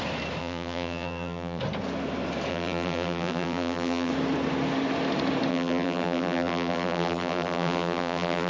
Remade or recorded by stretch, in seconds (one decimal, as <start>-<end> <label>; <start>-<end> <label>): 0.0-0.4 recorded; 0.4-1.6 remade; 1.6-2.5 recorded; 2.5-4.1 remade; 4.1-5.5 recorded; 5.5-8.5 remade